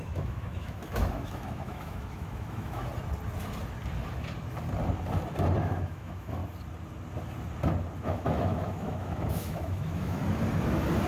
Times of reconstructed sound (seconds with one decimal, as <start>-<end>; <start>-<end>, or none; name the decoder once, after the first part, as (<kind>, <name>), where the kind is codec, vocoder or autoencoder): 0.0-2.9 (autoencoder, DAC-VAE); 5.6-6.4; 8.0-10.2

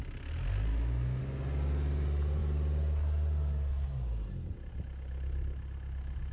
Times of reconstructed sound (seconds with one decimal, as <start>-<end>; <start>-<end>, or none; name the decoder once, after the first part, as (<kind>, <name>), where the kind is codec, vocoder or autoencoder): 0.7-1.2 (autoencoder, DAC-VAE)

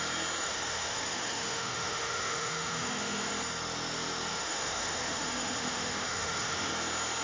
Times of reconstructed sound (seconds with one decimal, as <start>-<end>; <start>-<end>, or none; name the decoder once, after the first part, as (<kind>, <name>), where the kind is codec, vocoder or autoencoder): 0.4-3.3 (autoencoder, DAC-VAE); 4.3-6.7

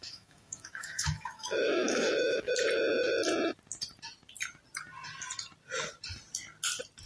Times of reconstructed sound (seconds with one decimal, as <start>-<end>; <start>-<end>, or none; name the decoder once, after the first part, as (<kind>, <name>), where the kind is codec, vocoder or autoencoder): 0.0-2.5 (autoencoder, DAC-VAE)

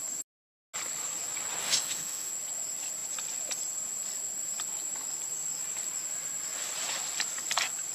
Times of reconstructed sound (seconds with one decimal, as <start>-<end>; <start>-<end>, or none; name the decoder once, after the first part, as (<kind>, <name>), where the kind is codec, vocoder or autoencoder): 1.6-2.3 (autoencoder, DAC-VAE)

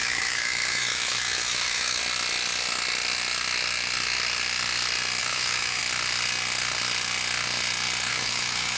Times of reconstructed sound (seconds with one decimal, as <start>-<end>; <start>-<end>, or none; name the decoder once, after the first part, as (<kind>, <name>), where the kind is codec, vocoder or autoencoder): 0.0-2.0 (autoencoder, DAC-VAE); 5.2-5.8; 8.1-8.8

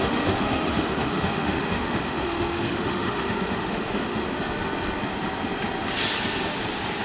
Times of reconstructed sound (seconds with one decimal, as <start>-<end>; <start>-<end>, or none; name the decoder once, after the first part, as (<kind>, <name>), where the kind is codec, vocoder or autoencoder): 0.0-4.2 (autoencoder, DAC-VAE)

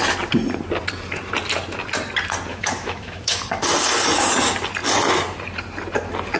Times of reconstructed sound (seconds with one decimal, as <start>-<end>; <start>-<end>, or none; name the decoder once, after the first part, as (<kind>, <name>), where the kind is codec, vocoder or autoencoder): 2.5-3.4 (autoencoder, DAC-VAE)